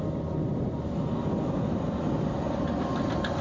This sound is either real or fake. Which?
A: real